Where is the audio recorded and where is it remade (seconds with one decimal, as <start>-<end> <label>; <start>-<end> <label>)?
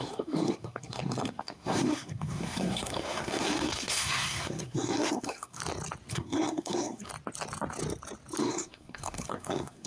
0.0-5.6 remade; 5.6-6.1 recorded; 6.1-7.1 remade; 7.1-8.4 recorded; 8.4-9.9 remade